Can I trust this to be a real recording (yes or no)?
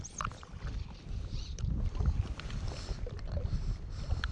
no